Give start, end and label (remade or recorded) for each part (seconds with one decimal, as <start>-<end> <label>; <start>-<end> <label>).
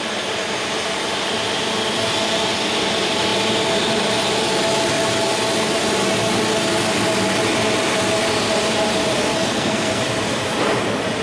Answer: 0.0-9.3 recorded; 9.3-10.0 remade; 10.0-11.2 recorded